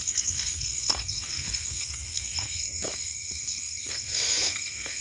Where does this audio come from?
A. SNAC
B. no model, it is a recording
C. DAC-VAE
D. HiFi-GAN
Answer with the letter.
A